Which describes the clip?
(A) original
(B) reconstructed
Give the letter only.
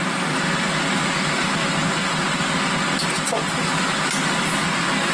A